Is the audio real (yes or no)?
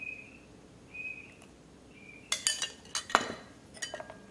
yes